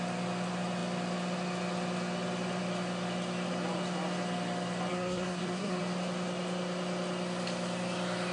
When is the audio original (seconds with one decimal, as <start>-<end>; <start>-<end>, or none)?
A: 0.0-4.9; 5.8-8.3